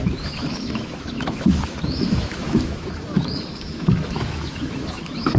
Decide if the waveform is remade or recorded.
remade